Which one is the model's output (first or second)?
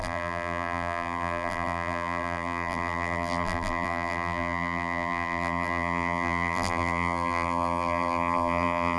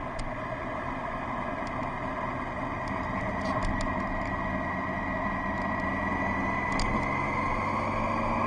first